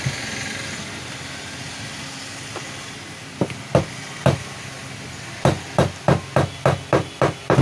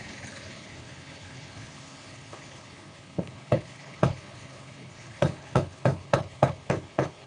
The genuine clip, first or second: first